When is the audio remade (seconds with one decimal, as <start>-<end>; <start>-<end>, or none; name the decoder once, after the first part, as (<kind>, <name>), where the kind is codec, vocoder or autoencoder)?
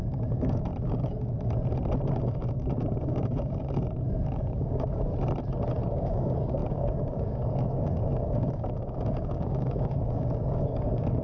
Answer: 0.0-0.7 (codec, DAC); 2.2-5.1; 5.9-11.2